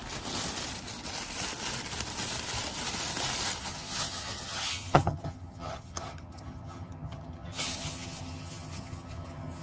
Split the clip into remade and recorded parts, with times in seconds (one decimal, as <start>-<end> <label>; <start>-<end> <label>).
0.0-3.6 recorded; 3.6-9.6 remade